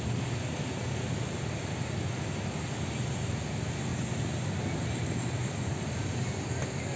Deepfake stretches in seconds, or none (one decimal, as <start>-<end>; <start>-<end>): none